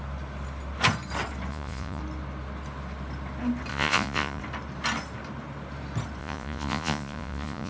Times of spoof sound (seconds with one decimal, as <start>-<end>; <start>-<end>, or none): 1.5-2.0; 3.7-4.4; 6.2-7.7